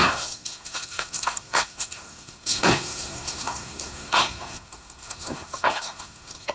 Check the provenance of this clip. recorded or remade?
remade